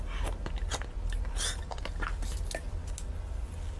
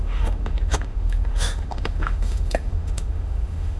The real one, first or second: first